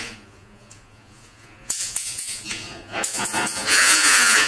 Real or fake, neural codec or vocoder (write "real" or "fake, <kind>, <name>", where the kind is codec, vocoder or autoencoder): fake, vocoder, Vocos